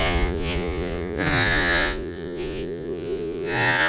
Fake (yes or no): yes